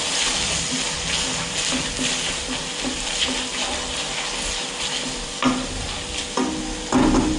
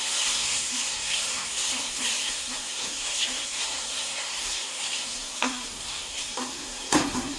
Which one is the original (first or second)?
first